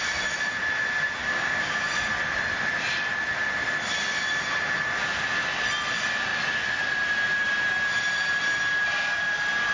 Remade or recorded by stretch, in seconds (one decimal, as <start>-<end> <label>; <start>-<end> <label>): 0.0-1.2 recorded; 1.2-1.9 remade; 1.9-9.7 recorded